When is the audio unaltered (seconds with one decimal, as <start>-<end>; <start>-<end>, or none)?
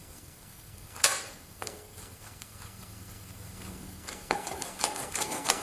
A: none